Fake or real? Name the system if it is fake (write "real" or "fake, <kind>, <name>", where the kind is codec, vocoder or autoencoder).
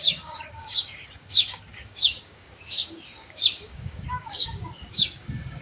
fake, codec, DAC